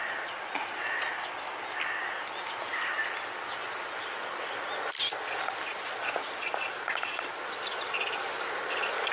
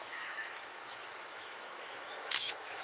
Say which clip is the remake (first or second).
second